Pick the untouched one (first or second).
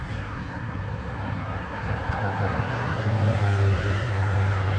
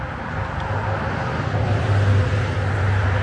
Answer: second